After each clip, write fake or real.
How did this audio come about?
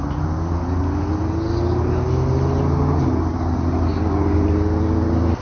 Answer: real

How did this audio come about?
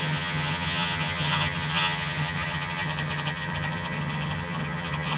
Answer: fake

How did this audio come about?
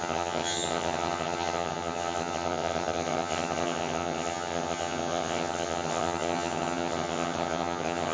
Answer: fake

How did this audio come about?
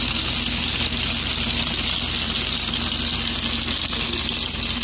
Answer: real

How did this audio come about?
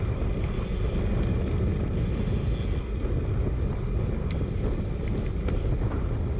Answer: real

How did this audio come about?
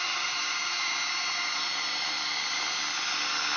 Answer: real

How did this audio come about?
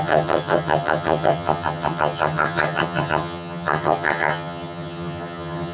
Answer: fake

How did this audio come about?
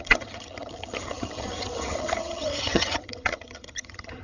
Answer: fake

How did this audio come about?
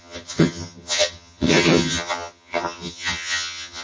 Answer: fake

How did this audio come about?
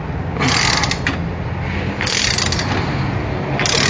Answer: real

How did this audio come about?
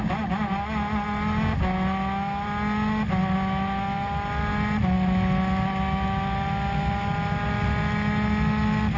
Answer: real